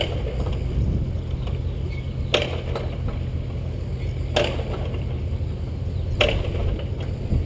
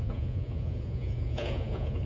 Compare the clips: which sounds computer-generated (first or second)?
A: second